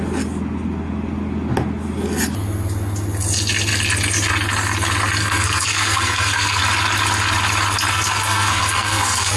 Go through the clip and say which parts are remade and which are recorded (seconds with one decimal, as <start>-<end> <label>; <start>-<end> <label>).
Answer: 0.0-5.2 recorded; 5.2-6.6 remade; 6.6-7.9 recorded; 7.9-9.4 remade